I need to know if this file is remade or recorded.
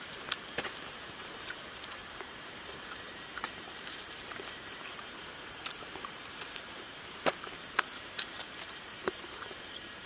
remade